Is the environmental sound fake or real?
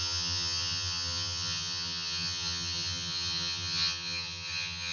fake